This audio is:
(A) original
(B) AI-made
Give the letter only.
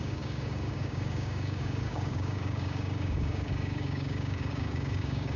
B